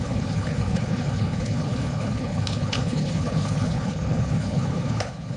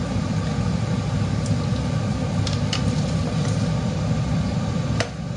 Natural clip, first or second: second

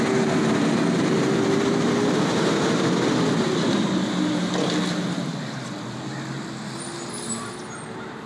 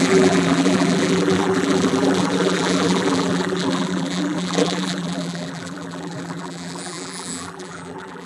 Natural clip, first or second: first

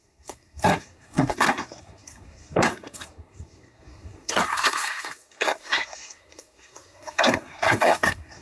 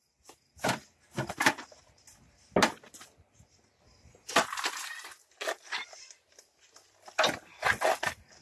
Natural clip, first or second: second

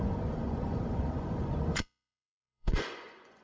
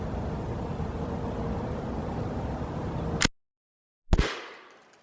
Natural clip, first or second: second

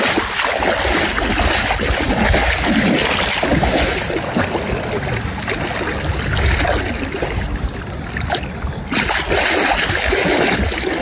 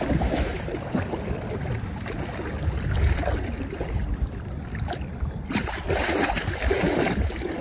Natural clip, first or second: first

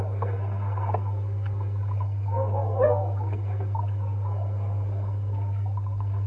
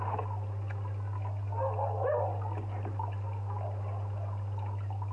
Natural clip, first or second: second